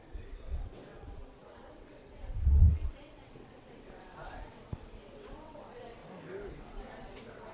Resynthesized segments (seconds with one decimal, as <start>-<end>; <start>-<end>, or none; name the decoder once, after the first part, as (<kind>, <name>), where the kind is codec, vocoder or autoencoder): 0.0-6.0 (vocoder, WaveNeXt); 6.5-7.5